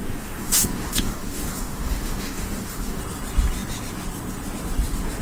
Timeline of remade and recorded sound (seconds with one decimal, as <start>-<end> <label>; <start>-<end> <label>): 0.0-3.0 remade; 3.0-5.2 recorded